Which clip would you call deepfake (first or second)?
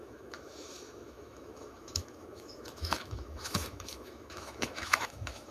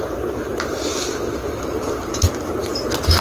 first